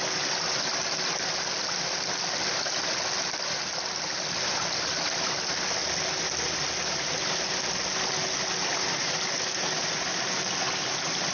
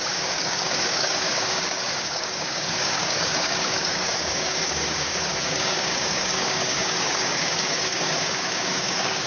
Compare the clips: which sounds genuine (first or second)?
first